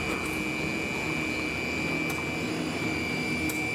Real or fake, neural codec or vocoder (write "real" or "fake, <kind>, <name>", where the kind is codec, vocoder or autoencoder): real